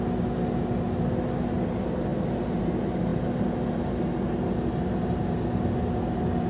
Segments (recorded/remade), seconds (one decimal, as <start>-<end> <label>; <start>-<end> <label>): 0.0-6.5 recorded